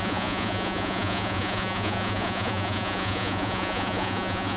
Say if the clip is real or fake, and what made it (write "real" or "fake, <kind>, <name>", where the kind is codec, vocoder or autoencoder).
fake, vocoder, Vocos